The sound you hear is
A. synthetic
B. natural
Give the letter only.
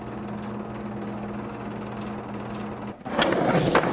B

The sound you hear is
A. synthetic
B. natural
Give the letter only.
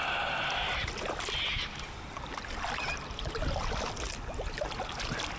B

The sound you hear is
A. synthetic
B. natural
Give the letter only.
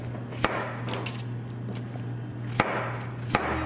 B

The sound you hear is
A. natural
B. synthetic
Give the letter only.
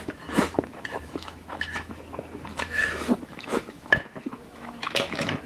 B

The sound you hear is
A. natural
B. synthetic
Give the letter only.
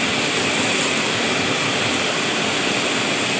A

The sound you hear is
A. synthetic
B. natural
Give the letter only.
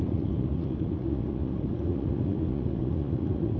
A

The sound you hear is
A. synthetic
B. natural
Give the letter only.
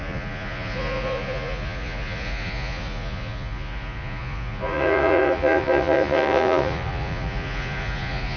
A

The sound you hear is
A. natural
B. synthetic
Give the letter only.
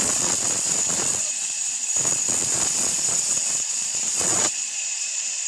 B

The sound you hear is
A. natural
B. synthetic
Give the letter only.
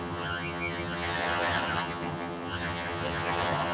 B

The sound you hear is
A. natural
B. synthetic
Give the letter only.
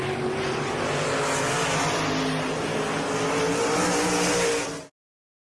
A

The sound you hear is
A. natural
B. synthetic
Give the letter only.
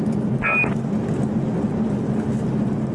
A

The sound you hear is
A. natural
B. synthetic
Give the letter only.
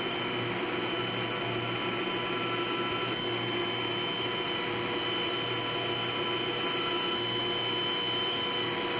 A